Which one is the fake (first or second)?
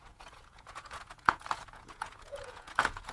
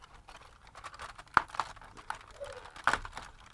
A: first